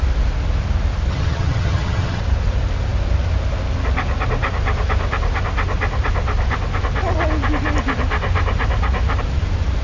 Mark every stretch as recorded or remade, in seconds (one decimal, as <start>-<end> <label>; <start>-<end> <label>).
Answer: 0.0-1.1 recorded; 1.1-2.2 remade; 2.2-9.8 recorded